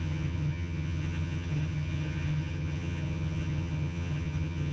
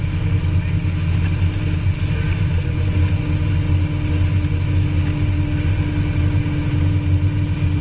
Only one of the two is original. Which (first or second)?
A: second